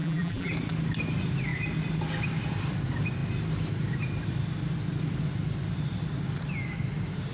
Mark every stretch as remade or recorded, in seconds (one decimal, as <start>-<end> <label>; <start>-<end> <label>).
0.0-0.5 remade; 0.5-7.3 recorded